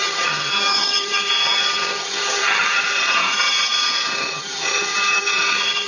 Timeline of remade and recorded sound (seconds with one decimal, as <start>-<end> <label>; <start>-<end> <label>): 0.0-5.9 remade